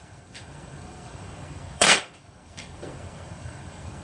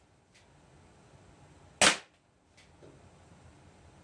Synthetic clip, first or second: first